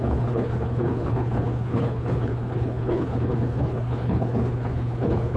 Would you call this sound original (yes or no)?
no